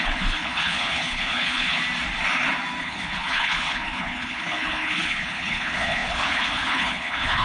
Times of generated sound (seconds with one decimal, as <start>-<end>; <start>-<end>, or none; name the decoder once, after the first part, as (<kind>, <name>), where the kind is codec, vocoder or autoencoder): 0.0-1.8 (codec, HILCodec); 2.8-7.4